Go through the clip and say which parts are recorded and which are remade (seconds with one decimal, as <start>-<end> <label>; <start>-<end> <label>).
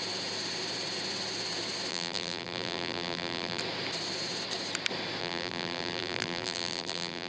0.0-1.9 recorded; 1.9-3.6 remade; 3.6-5.2 recorded; 5.2-7.3 remade